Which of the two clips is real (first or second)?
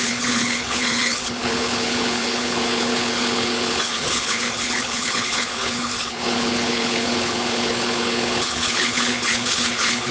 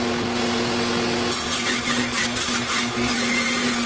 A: second